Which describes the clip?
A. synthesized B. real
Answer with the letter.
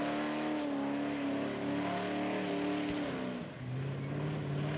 B